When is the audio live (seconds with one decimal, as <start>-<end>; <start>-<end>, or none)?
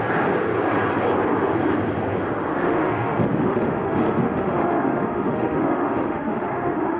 0.0-2.5